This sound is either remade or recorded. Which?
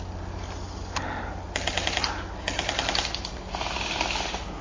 recorded